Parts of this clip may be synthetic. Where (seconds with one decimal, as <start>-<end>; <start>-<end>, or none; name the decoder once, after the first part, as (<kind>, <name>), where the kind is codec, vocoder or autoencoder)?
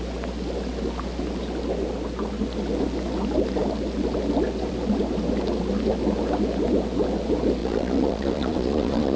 7.6-9.2 (vocoder, Vocos)